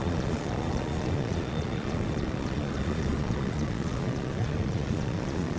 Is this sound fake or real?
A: fake